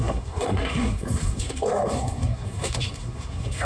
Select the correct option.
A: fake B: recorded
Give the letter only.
A